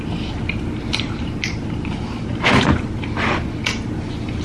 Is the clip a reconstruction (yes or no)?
yes